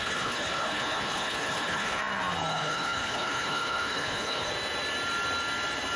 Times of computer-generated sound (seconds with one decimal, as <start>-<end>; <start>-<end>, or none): 0.0-2.0; 2.5-4.5